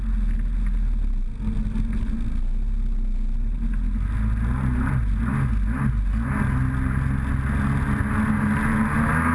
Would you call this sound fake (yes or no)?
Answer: no